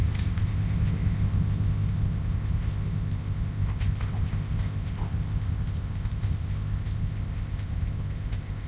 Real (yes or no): no